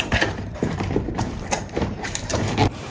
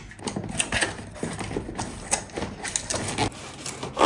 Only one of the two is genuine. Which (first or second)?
second